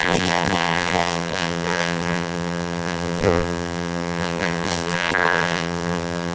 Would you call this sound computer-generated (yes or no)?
yes